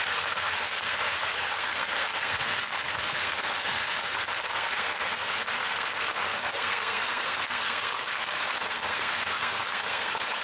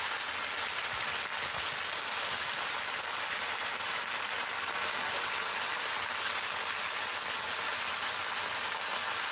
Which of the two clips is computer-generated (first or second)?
first